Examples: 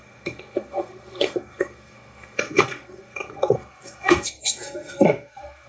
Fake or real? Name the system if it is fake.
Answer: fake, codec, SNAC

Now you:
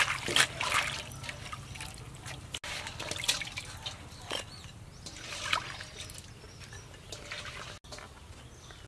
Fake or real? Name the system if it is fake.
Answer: real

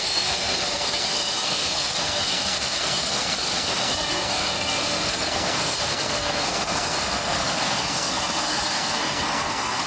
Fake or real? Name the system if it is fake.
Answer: fake, codec, SNAC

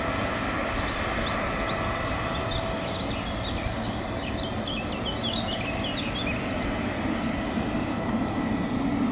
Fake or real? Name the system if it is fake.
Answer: real